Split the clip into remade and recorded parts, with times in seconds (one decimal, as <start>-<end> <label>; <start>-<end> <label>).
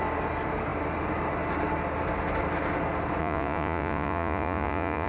0.0-3.2 recorded; 3.2-5.1 remade